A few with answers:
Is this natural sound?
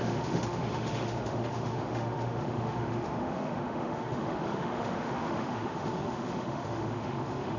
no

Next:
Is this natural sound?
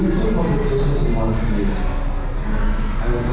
yes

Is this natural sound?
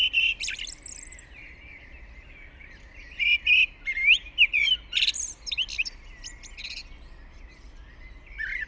yes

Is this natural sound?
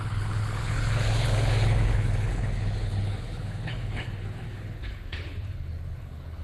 no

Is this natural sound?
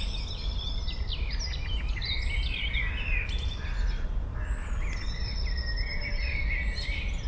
yes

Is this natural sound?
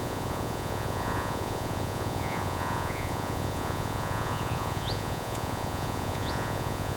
no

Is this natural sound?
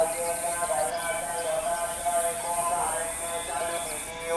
yes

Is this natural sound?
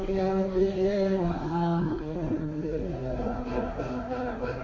no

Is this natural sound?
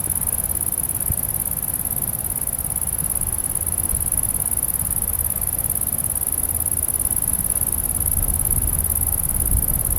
yes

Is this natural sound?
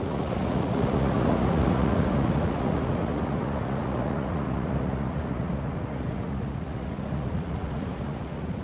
no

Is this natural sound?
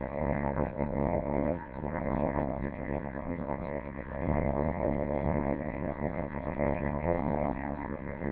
no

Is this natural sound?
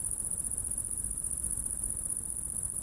no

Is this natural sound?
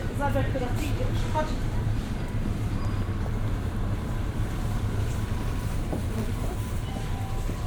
no